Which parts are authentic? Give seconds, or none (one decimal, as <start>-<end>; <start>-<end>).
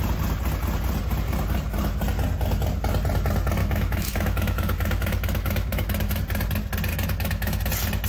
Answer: 0.0-3.6; 6.2-6.9; 7.6-8.1